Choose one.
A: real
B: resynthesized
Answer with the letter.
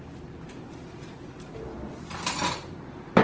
A